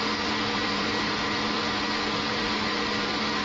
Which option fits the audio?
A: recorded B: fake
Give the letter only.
B